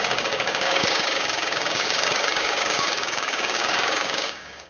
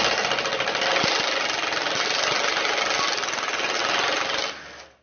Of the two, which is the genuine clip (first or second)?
second